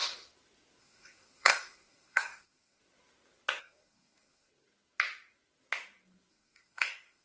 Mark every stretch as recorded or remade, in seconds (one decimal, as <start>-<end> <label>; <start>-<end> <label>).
0.0-0.8 recorded; 0.8-2.8 remade; 2.8-3.6 recorded; 3.6-4.5 remade; 4.5-6.3 recorded; 6.3-7.2 remade